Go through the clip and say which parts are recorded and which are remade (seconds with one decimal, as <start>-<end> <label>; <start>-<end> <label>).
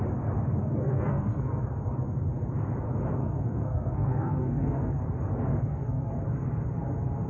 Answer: 0.0-0.6 recorded; 0.6-1.6 remade; 1.6-3.2 recorded; 3.2-4.9 remade; 4.9-5.5 recorded; 5.5-6.1 remade; 6.1-7.3 recorded